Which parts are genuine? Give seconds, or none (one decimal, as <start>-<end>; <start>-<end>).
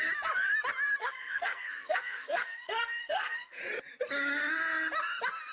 0.0-1.0; 3.6-5.5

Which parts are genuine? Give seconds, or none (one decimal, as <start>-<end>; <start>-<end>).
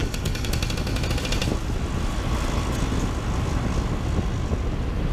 0.5-5.1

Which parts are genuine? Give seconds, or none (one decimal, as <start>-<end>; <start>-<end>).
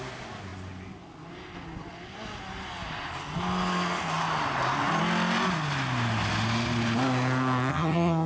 0.0-7.7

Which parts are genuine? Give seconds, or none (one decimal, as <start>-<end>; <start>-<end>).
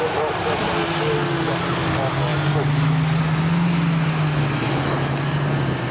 0.0-5.9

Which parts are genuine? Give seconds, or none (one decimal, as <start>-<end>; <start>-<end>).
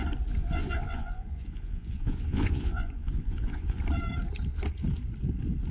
0.0-0.4; 3.8-5.7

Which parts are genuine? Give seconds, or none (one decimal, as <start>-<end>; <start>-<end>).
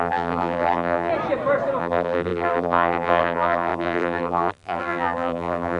1.1-1.8